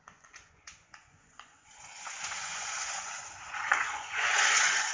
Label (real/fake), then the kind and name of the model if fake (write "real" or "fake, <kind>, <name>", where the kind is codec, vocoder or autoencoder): fake, vocoder, Vocos